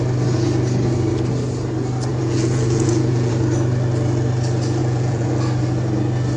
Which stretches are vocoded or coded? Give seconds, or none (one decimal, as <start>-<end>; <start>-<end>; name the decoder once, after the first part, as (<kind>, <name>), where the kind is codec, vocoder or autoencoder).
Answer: 2.1-3.3 (vocoder, Vocos); 4.8-5.3